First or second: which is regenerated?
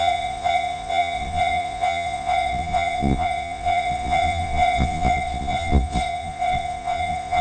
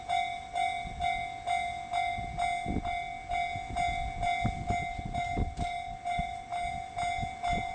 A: first